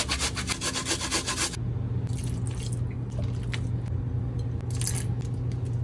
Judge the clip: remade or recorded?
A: recorded